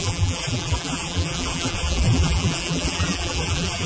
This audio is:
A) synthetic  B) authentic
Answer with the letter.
A